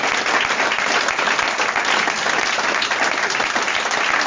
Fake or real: real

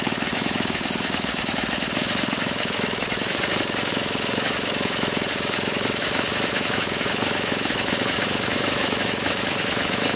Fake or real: fake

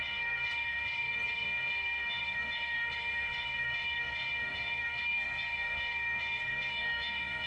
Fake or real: fake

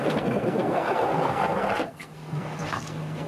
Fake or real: fake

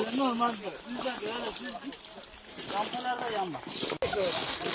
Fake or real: real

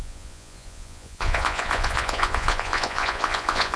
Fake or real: fake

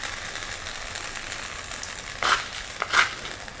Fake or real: real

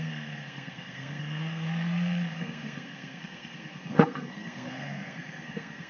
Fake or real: fake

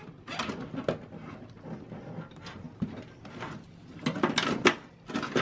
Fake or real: real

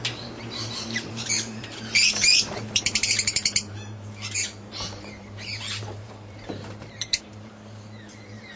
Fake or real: fake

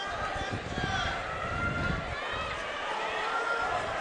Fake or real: real